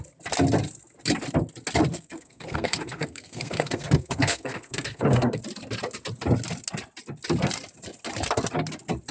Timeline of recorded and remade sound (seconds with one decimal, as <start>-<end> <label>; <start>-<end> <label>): 0.0-1.9 recorded; 1.9-5.4 remade; 5.4-9.1 recorded